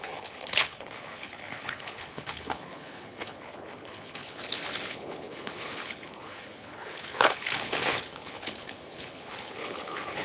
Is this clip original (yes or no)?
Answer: no